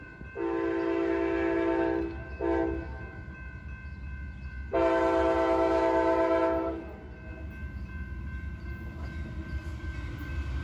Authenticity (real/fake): real